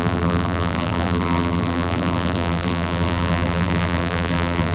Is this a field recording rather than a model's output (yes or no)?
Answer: no